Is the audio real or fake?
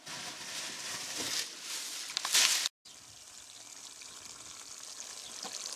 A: real